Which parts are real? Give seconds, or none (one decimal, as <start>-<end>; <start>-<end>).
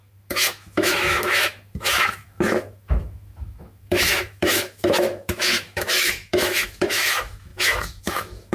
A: none